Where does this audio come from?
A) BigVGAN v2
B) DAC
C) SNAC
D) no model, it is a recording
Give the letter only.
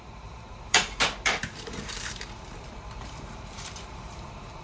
A